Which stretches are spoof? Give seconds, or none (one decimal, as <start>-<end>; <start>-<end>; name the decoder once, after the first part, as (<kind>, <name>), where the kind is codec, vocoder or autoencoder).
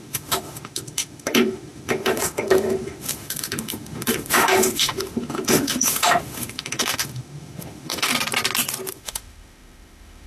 0.0-8.1 (autoencoder, DAC-VAE); 8.9-10.3